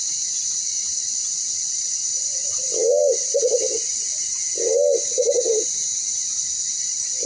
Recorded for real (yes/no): yes